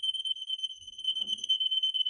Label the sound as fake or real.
fake